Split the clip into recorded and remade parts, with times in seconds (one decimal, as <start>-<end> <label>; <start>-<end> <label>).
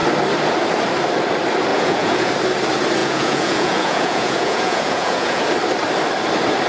0.0-1.7 recorded; 1.7-2.3 remade; 2.3-3.0 recorded; 3.0-5.4 remade; 5.4-6.7 recorded